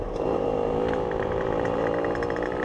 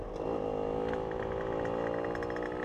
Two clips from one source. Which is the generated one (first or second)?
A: first